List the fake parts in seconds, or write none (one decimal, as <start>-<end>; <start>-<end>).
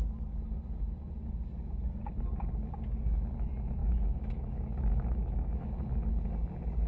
3.8-5.8